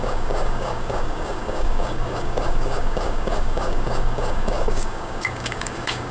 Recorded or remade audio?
remade